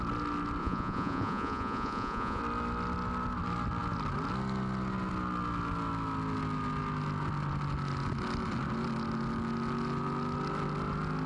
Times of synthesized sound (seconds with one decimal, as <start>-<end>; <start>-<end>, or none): 0.6-2.4

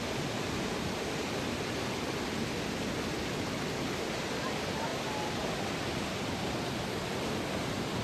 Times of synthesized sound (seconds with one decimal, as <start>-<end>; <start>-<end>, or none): none